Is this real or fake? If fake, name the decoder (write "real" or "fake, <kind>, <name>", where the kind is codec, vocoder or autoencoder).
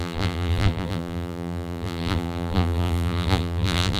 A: fake, vocoder, BigVGAN v2